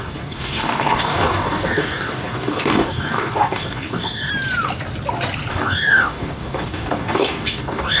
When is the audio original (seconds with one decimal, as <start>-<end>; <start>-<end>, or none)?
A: 4.3-5.5